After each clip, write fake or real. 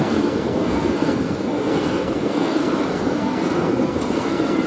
fake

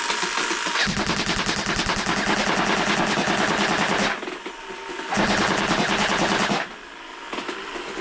real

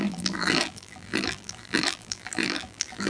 fake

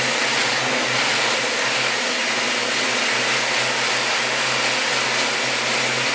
real